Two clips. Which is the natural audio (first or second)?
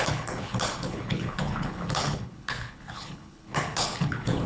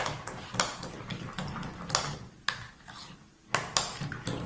second